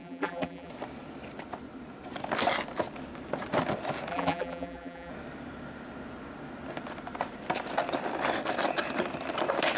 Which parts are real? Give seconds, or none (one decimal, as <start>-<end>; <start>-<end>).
0.7-4.1; 5.1-9.8